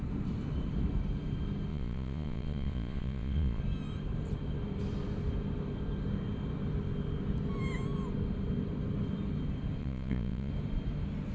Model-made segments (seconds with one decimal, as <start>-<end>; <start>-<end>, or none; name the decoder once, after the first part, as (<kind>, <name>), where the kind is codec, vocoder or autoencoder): 1.7-3.6 (vocoder, Vocos); 9.8-10.5